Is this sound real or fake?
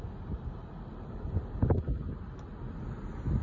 real